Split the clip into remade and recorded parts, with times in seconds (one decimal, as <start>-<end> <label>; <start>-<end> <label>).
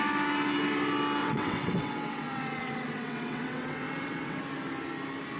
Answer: 0.0-1.2 recorded; 1.2-4.4 remade; 4.4-5.4 recorded